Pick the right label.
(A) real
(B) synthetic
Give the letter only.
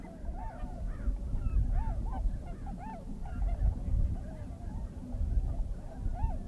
B